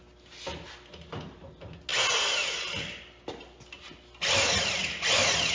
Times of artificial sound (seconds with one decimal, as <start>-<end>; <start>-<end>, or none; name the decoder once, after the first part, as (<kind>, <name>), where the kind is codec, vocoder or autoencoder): none